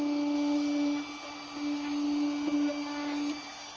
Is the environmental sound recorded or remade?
recorded